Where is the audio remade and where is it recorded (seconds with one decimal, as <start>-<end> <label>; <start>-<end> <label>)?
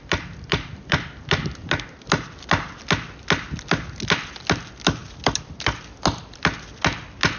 0.0-7.4 recorded